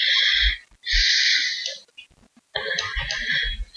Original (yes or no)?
yes